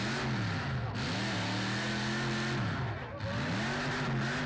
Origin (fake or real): real